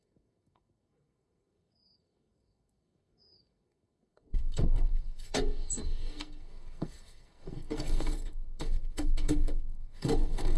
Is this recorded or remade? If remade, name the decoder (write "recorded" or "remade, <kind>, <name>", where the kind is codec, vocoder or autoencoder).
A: remade, codec, SNAC